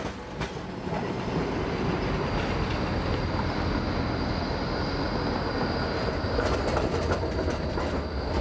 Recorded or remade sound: recorded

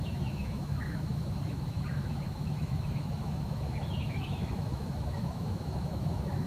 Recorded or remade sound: remade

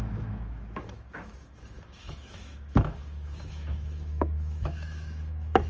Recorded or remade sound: remade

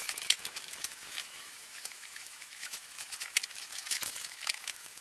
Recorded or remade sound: remade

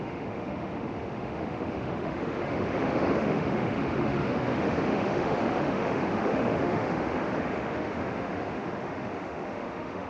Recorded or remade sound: remade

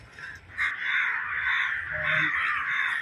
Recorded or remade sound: recorded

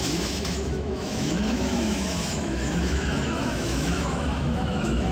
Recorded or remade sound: remade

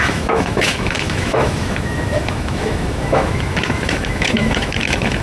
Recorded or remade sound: remade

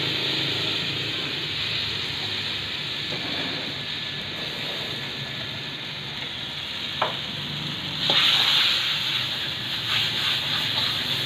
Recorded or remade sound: recorded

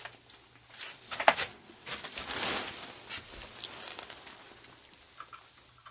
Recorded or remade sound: recorded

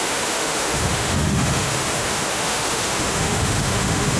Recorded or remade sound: remade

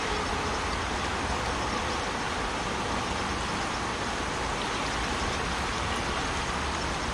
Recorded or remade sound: recorded